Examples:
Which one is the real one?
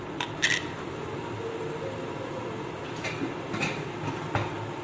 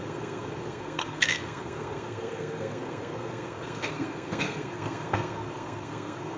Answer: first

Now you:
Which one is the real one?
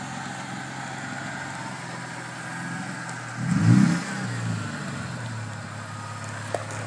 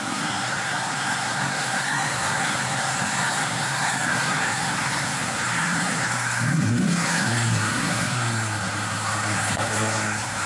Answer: first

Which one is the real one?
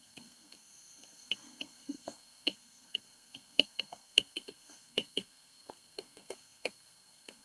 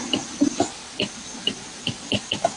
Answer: second